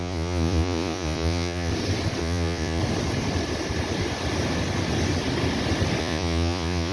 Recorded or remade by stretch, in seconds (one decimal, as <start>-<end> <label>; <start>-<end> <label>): 0.0-1.7 remade; 1.7-2.2 recorded; 2.2-2.8 remade; 2.8-6.0 recorded; 6.0-6.9 remade